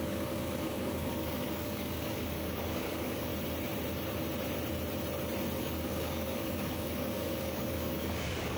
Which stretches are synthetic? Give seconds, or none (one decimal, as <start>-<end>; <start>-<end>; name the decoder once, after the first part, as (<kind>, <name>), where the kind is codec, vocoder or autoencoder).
0.0-3.3 (codec, DAC); 5.6-8.6